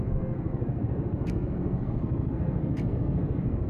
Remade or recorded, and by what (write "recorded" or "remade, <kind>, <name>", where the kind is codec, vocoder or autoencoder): remade, codec, SNAC